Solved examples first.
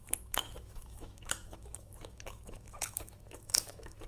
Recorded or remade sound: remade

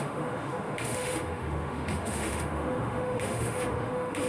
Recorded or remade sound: remade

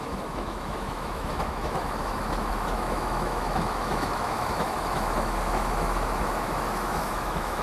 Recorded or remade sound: remade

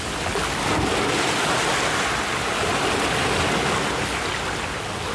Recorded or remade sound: recorded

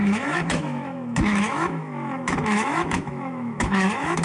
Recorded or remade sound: remade